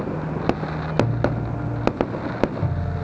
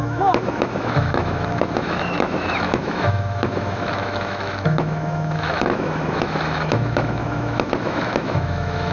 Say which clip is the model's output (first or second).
second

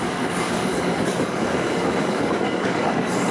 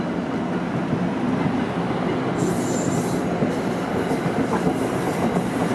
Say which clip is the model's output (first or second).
first